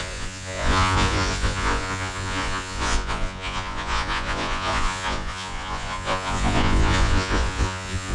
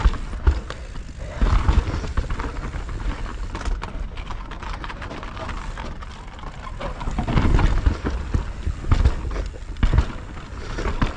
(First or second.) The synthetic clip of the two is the first